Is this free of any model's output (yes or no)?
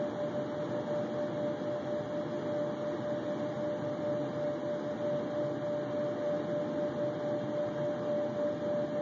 yes